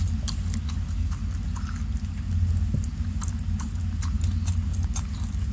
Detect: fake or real real